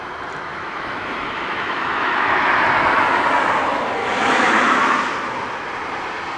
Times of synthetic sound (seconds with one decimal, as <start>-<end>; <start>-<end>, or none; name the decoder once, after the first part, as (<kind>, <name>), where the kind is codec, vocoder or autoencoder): 0.5-2.5 (autoencoder, DAC-VAE); 4.0-5.1